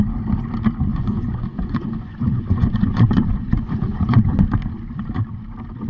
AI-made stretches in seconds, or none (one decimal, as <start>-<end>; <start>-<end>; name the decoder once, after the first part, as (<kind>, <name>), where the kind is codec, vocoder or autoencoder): 0.9-4.4 (vocoder, Vocos)